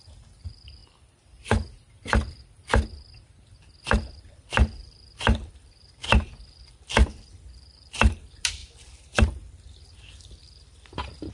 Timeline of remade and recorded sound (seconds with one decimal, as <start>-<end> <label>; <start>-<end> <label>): 0.0-0.8 remade; 0.8-4.3 recorded; 4.3-8.6 remade; 8.6-10.4 recorded; 10.4-11.3 remade